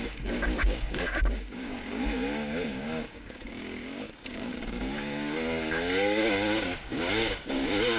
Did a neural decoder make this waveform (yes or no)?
yes